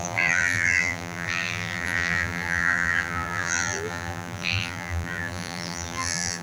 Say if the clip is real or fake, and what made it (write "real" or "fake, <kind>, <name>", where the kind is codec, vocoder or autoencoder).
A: fake, vocoder, BigVGAN v2